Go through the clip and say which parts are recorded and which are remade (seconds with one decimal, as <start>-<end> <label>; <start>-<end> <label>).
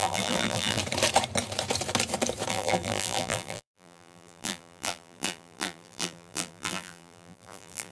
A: 0.0-0.8 remade; 0.8-2.5 recorded; 2.5-7.9 remade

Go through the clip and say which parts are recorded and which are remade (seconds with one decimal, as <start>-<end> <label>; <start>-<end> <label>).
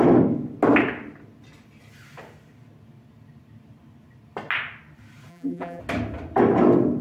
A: 0.0-5.3 recorded; 5.3-5.8 remade; 5.8-7.0 recorded